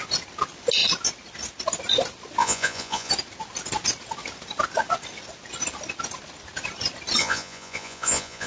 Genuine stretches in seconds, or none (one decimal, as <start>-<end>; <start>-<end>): 0.0-2.4; 3.1-7.2